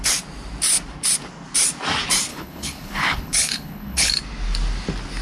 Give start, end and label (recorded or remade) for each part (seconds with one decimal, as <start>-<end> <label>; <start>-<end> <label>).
0.0-2.3 recorded; 2.3-4.1 remade; 4.1-5.2 recorded